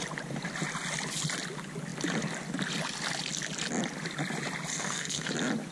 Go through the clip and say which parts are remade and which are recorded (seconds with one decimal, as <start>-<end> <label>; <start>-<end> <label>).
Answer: 0.0-4.7 recorded; 4.7-5.3 remade; 5.3-5.7 recorded